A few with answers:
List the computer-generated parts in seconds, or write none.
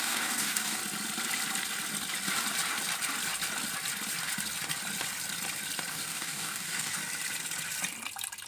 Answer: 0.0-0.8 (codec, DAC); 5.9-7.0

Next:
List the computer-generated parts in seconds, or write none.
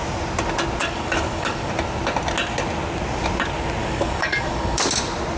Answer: 0.8-1.7 (codec, DAC); 3.8-4.8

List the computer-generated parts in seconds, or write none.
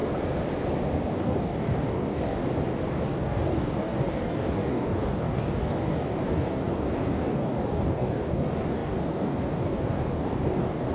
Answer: 1.1-2.4 (codec, DAC); 2.9-10.9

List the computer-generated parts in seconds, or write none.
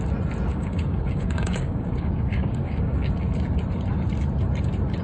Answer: 0.5-3.1 (codec, DAC)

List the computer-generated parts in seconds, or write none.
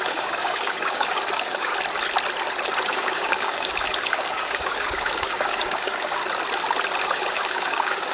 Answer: 0.0-1.7 (codec, DAC); 2.9-6.2; 7.0-8.1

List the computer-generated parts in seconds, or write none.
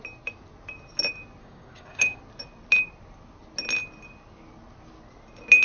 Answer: 1.4-2.2 (codec, DAC)